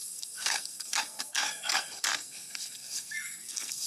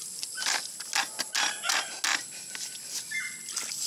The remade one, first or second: first